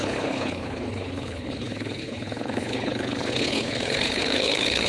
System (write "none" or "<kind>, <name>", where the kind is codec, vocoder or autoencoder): codec, HILCodec